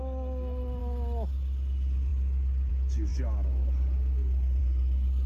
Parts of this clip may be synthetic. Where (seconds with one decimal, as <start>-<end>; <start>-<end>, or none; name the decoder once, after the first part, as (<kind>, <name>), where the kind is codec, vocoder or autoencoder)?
none